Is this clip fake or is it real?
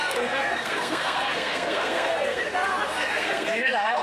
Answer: fake